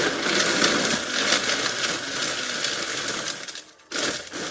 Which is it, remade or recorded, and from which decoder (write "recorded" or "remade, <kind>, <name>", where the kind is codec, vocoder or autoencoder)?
recorded